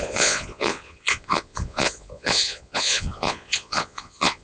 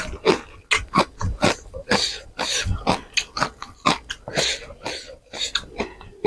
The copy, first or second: first